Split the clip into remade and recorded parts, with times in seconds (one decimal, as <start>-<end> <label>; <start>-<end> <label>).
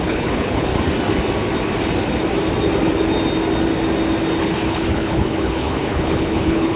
0.0-0.7 remade; 0.7-4.4 recorded; 4.4-6.8 remade